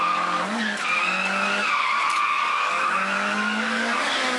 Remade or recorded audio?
remade